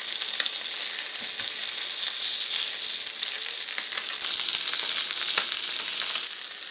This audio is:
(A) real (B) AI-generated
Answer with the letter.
A